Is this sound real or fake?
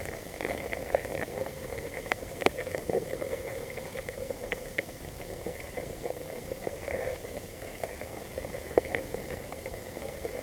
fake